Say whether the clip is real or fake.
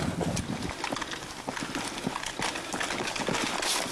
real